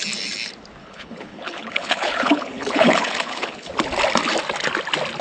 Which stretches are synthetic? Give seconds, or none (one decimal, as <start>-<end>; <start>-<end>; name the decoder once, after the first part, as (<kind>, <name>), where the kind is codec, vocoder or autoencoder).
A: 0.8-3.7 (codec, HILCodec)